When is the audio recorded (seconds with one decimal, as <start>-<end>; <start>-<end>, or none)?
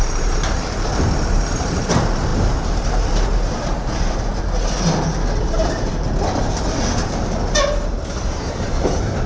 4.3-5.4; 5.9-8.2